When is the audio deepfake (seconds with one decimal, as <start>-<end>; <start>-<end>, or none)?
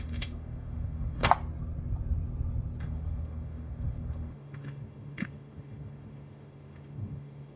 0.0-1.2; 2.8-7.6